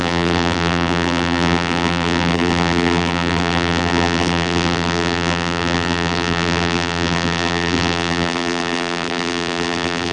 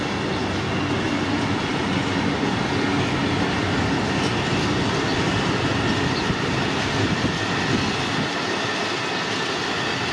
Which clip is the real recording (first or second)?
second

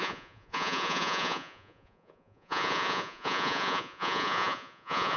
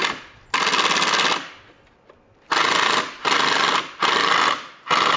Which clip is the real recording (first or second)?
second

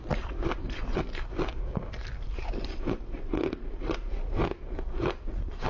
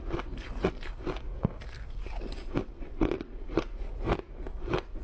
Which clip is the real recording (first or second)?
second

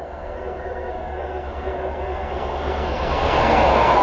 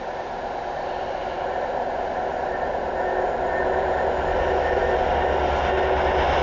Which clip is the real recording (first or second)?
second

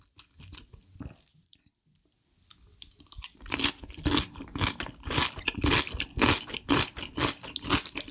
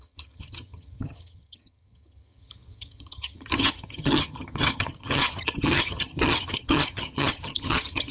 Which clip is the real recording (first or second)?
first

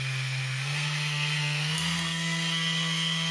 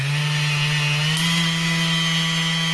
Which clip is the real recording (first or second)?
second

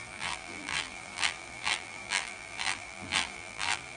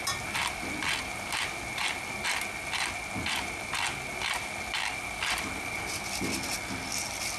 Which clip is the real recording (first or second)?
second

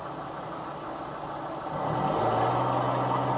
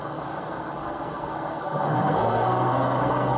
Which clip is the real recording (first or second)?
first